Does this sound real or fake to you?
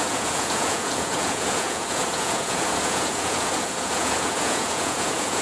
fake